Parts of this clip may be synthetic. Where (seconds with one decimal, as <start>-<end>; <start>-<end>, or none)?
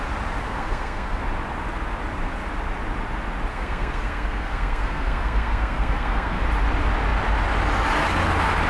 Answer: 0.4-1.2; 3.5-6.4